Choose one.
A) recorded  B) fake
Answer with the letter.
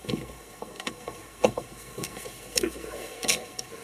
B